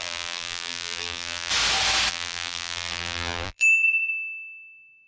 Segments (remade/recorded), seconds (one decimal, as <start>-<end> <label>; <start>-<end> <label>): 0.0-1.5 remade; 1.5-2.1 recorded; 2.1-4.1 remade; 4.1-5.1 recorded